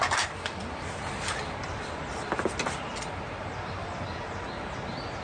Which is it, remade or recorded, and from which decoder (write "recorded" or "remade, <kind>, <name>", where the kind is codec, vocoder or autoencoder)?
recorded